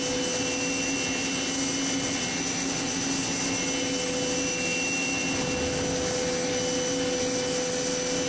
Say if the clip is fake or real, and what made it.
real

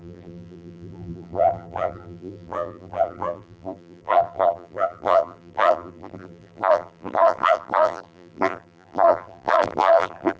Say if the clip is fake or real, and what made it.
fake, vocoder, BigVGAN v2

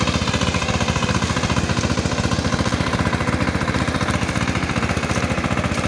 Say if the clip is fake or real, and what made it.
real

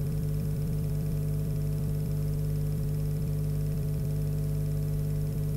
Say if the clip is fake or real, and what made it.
fake, vocoder, BigVGAN v2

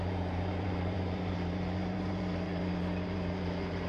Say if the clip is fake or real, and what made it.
fake, vocoder, BigVGAN v2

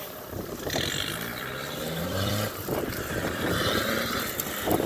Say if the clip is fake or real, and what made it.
fake, vocoder, BigVGAN v2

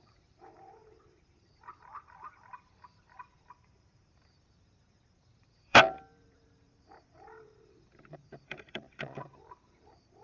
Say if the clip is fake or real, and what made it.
fake, vocoder, BigVGAN v2